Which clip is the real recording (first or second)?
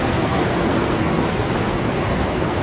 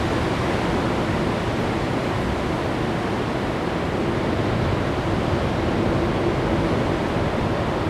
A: second